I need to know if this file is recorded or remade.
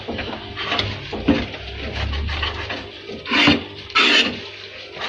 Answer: recorded